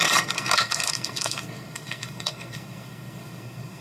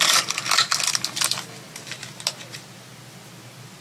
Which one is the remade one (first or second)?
first